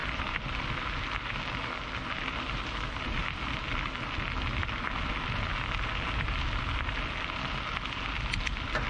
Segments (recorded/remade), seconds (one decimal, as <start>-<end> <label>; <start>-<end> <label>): 0.0-0.7 remade; 0.7-8.9 recorded